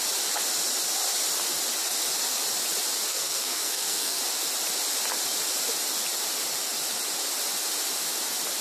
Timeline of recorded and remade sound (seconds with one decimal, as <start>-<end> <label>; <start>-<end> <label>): 0.0-3.1 recorded; 3.1-4.2 remade; 4.2-8.6 recorded